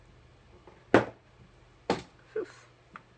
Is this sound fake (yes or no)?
no